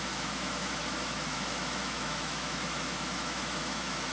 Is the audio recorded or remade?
remade